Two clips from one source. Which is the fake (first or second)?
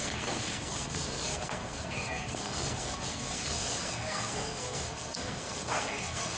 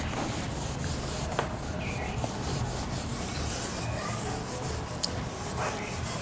first